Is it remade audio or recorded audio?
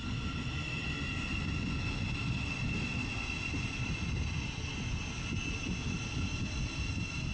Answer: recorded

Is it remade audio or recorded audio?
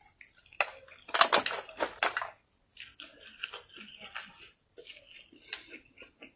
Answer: recorded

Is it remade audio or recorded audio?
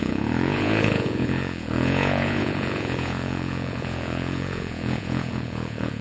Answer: remade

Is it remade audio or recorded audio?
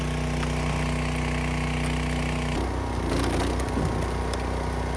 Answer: recorded